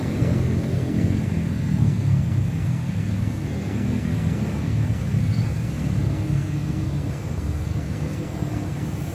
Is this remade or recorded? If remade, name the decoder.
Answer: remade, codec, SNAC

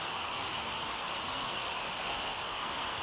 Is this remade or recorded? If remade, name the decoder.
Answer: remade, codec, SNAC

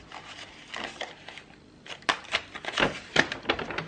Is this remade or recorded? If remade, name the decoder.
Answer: recorded